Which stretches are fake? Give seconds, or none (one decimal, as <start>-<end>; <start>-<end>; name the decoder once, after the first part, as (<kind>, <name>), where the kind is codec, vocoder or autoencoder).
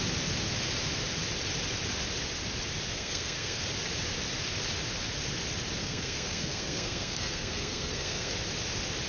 2.9-3.6 (codec, SNAC); 5.8-8.3